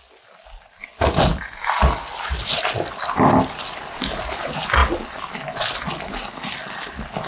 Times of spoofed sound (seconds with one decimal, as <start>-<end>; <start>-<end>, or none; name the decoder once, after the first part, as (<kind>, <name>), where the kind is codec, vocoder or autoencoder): 1.3-3.1 (vocoder, BigVGAN v2); 4.8-6.1